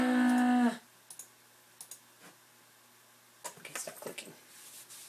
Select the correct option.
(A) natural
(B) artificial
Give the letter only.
A